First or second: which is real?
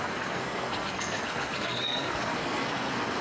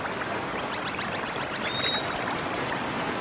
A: second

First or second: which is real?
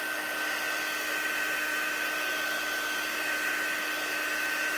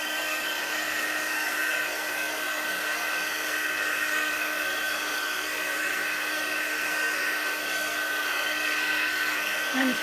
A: first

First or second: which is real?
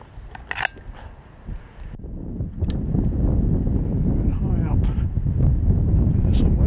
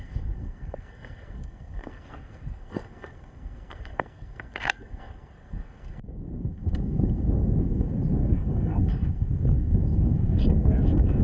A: first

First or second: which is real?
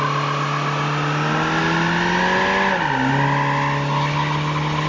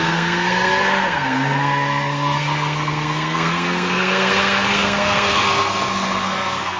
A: first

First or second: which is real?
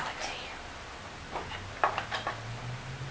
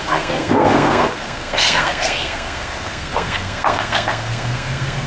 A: first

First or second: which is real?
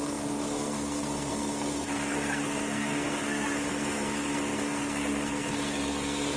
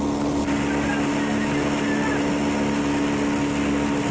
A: second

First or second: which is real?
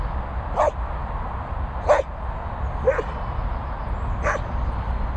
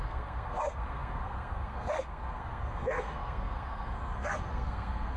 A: first